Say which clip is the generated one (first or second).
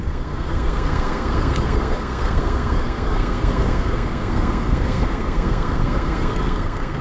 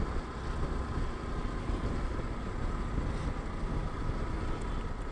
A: first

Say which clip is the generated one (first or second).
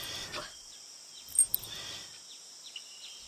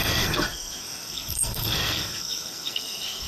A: second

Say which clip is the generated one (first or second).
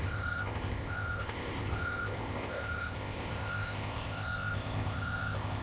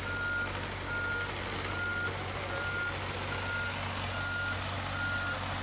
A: first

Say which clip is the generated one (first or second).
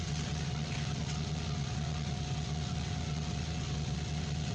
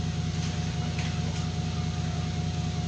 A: first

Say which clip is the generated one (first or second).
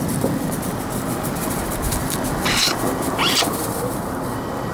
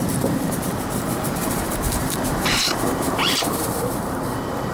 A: second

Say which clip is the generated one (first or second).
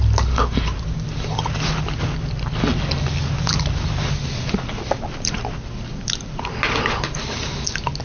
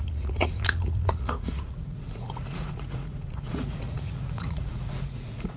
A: second